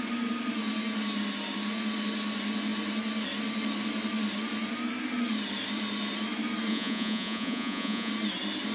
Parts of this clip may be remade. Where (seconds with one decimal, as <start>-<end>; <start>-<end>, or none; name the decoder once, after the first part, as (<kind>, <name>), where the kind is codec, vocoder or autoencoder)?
6.7-8.1 (vocoder, Vocos)